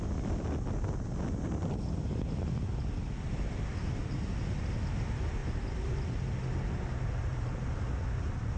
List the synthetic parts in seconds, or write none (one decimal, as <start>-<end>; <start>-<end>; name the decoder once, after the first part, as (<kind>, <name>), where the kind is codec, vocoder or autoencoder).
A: none